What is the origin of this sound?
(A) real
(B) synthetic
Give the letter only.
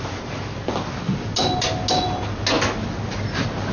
A